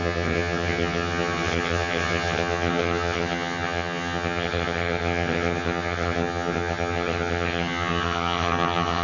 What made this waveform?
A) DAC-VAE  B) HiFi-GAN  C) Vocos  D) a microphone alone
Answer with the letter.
B